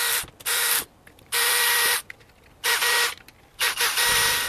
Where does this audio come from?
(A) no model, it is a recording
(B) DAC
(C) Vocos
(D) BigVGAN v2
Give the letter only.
A